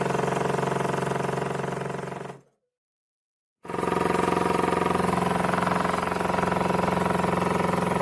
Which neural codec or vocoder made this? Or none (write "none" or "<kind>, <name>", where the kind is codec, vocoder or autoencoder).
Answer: none